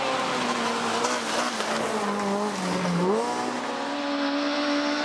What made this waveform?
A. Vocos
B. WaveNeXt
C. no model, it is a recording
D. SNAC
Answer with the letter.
C